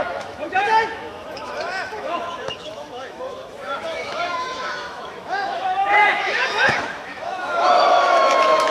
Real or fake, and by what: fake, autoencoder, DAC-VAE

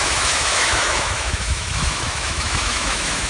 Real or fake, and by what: fake, autoencoder, DAC-VAE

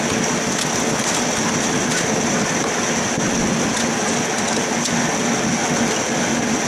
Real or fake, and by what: real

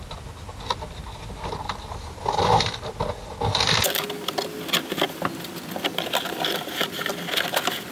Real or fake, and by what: real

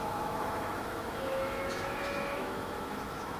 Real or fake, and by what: fake, autoencoder, DAC-VAE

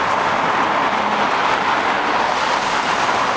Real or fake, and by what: real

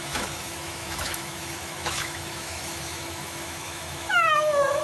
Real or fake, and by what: fake, autoencoder, DAC-VAE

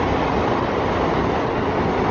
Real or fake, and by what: real